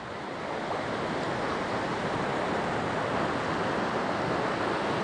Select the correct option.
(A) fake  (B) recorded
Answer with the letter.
B